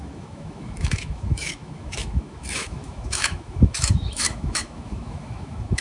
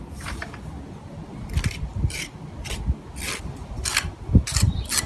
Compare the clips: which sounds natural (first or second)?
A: second